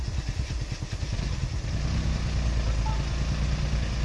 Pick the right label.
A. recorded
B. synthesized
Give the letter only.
A